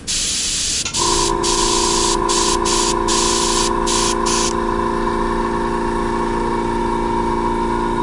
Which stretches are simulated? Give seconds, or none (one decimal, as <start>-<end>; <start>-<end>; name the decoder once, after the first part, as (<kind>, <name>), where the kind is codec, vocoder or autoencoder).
1.3-2.3 (vocoder, BigVGAN v2)